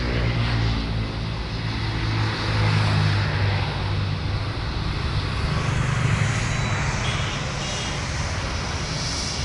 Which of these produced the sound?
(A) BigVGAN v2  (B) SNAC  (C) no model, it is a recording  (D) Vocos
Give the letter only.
C